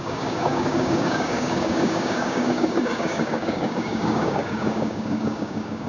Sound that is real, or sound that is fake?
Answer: fake